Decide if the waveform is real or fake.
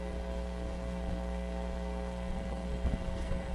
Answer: fake